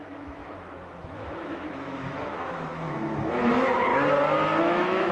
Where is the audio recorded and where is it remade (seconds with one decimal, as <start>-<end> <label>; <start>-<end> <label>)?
0.0-3.9 remade; 3.9-4.6 recorded; 4.6-5.1 remade